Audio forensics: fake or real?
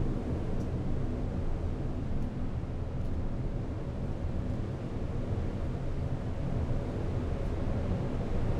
real